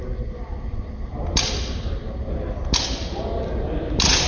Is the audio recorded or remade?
recorded